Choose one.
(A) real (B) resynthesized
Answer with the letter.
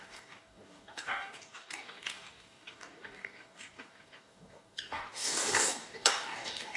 B